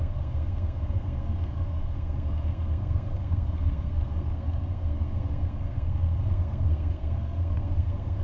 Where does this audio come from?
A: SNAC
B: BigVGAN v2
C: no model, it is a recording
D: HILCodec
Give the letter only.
A